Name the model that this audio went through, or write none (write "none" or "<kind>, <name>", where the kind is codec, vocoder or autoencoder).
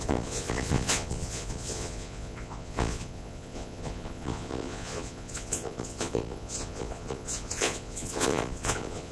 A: vocoder, Vocos